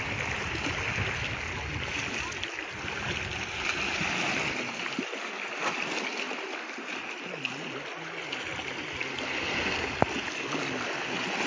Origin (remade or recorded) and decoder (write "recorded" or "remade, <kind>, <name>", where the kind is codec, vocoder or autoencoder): recorded